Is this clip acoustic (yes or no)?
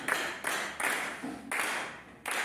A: yes